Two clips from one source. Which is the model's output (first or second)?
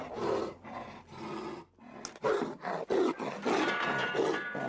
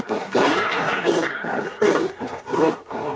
second